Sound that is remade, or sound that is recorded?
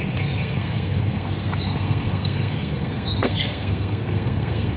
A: remade